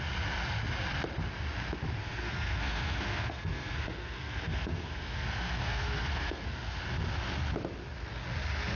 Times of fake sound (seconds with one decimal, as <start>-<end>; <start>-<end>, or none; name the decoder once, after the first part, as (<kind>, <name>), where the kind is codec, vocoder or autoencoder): 2.0-6.8 (codec, SNAC)